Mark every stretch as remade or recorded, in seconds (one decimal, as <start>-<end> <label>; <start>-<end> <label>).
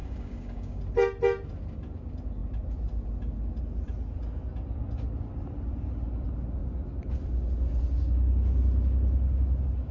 0.0-0.8 remade; 0.8-9.9 recorded